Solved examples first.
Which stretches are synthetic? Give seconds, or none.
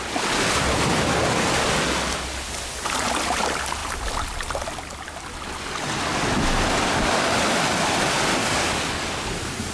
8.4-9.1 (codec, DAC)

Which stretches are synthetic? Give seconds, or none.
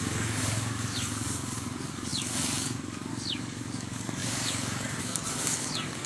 0.0-6.1 (codec, DAC)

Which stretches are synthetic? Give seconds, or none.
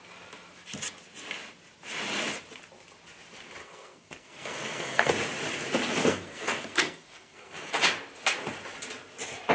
3.6-5.1 (codec, SNAC); 6.0-7.7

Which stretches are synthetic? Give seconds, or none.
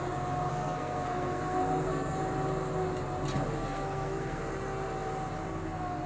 0.5-2.2 (codec, SNAC); 3.6-4.4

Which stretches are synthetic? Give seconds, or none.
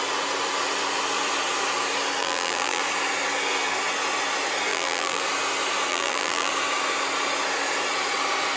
2.2-2.8 (vocoder, BigVGAN v2); 4.7-5.2; 5.9-6.5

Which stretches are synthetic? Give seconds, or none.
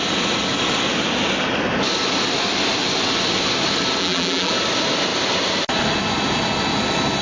4.0-4.5 (vocoder, BigVGAN v2)